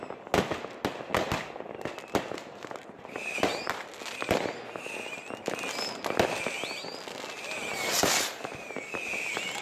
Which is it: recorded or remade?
recorded